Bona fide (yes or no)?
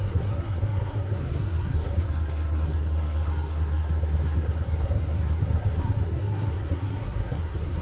no